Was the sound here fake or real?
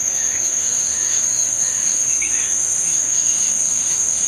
fake